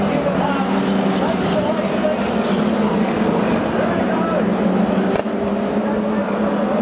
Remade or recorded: recorded